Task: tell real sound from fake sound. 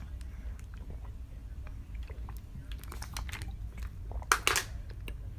real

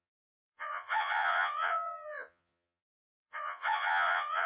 fake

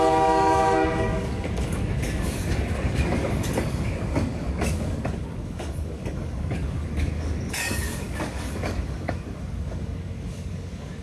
fake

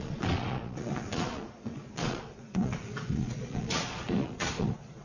fake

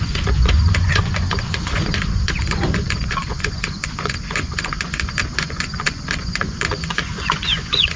fake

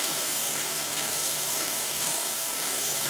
fake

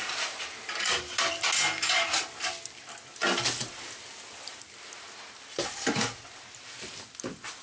real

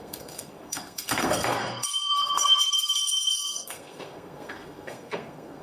fake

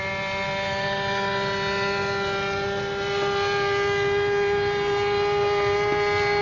real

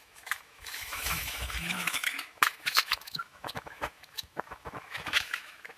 fake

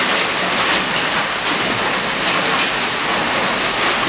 real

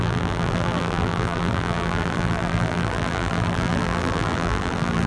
fake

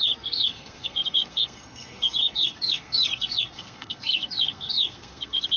fake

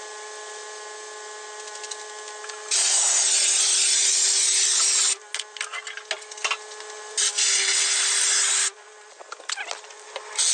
real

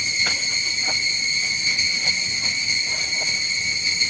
real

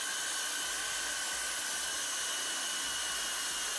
real